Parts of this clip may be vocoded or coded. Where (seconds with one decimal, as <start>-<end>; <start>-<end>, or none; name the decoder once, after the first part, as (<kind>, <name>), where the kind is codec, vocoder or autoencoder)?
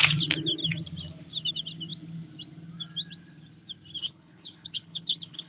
4.0-5.5 (codec, HILCodec)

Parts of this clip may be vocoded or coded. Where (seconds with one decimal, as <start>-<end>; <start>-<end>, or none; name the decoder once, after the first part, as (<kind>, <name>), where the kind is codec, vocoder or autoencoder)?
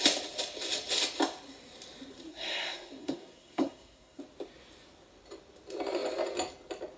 2.3-4.2 (codec, SNAC)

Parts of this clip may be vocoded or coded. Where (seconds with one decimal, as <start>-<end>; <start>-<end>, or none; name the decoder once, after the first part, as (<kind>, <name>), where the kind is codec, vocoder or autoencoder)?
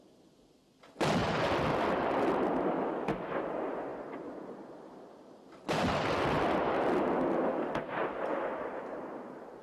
1.2-2.9 (vocoder, BigVGAN v2); 3.9-6.4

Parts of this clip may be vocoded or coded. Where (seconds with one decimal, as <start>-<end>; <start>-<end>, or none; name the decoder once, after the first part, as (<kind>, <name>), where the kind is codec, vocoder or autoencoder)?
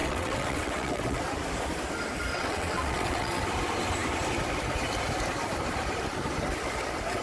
0.0-1.2 (vocoder, WaveNeXt); 2.3-3.4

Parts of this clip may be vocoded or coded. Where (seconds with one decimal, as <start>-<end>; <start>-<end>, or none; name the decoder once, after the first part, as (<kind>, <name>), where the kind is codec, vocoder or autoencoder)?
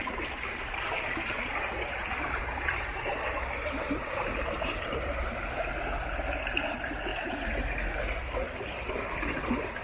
0.0-5.1 (vocoder, BigVGAN v2); 7.1-8.0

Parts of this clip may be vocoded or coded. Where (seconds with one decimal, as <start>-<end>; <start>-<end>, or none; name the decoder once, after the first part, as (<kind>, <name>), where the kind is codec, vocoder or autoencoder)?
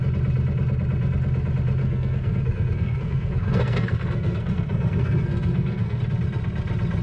1.8-6.0 (codec, SNAC)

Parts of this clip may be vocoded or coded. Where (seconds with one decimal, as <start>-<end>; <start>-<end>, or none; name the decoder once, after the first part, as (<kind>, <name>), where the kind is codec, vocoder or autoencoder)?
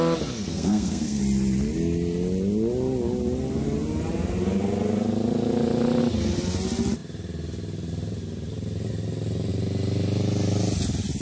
0.5-1.2 (codec, SNAC)